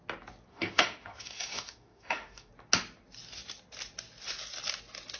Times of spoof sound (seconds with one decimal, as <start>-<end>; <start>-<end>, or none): 0.5-2.5